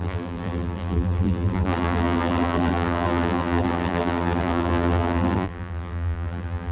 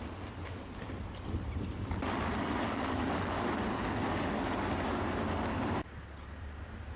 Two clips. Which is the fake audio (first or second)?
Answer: first